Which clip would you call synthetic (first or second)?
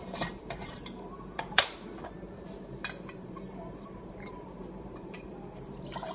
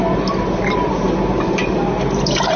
first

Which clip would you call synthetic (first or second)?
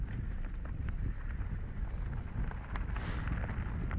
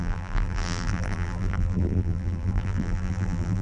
second